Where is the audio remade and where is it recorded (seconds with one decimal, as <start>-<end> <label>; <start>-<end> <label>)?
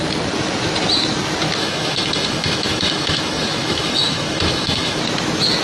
0.0-1.6 recorded; 1.6-5.0 remade; 5.0-5.6 recorded